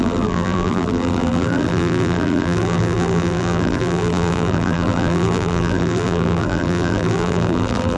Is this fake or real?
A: fake